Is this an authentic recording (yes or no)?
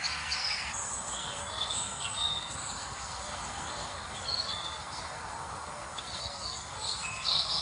no